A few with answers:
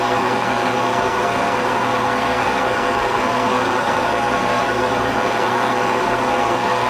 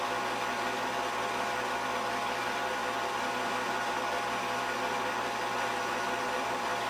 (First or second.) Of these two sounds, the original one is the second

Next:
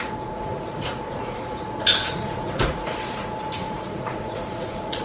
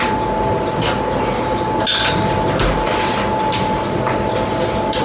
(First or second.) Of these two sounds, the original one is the second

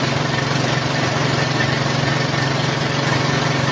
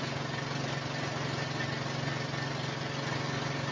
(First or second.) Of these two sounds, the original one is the second